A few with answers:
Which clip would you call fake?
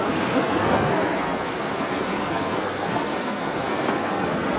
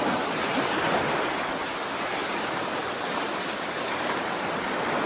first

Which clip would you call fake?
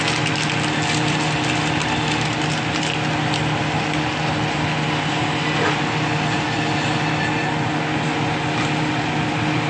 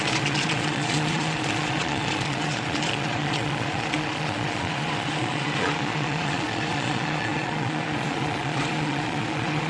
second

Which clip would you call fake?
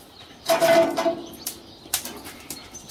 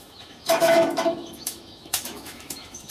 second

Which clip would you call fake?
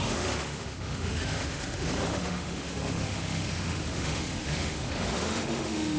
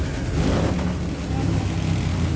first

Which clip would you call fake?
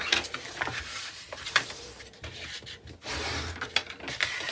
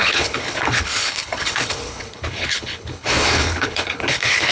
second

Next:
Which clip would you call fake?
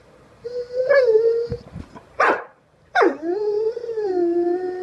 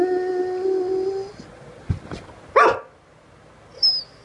first